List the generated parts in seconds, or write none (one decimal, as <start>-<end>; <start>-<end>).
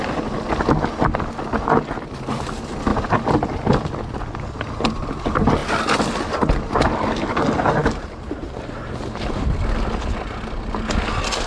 7.8-9.5